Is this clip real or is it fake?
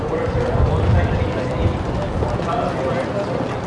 real